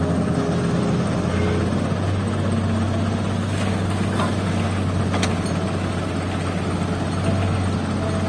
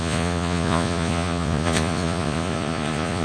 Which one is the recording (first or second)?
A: first